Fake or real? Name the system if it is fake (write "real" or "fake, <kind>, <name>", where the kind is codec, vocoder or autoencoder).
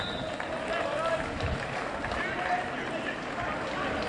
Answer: real